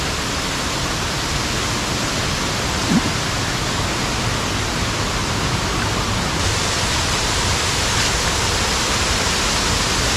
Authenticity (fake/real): real